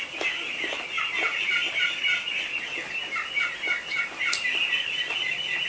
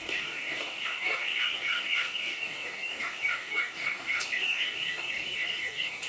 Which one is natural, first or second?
first